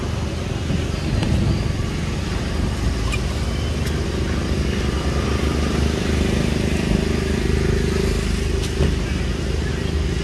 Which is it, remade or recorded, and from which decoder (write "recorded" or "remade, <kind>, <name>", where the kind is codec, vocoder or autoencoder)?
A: recorded